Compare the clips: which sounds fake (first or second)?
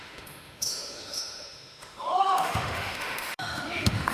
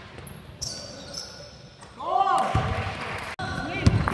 first